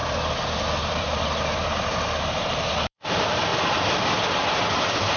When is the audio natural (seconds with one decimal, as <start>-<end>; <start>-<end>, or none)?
3.1-3.5